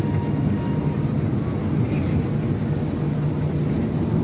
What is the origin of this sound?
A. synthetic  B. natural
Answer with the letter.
B